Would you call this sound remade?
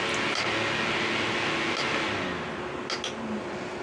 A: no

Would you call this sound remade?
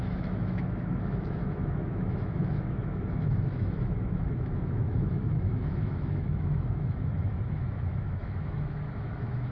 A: yes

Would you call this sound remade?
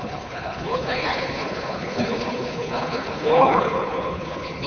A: yes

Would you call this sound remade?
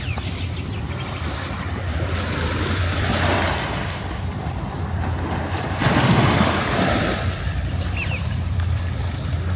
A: yes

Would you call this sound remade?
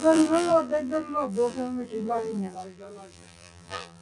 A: yes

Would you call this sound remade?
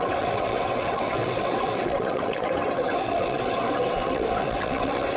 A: yes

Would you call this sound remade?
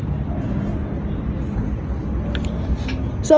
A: no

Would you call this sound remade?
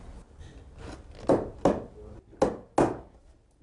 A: no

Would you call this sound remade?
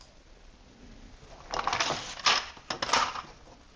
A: no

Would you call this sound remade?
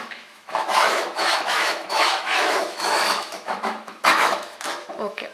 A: yes